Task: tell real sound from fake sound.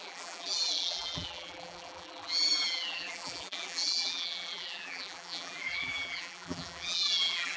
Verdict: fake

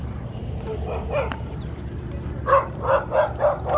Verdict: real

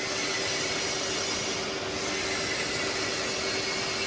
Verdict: real